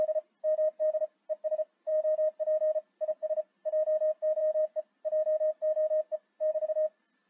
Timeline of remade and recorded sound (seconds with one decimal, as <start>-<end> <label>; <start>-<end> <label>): 0.0-7.3 recorded